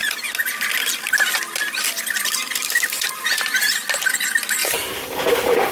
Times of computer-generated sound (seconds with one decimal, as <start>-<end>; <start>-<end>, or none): 2.4-3.8; 4.6-5.2